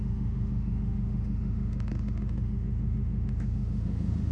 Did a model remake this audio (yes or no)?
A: yes